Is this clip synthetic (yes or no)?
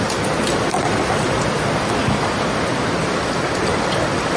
no